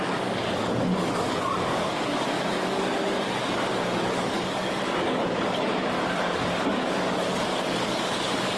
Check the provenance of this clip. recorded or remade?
remade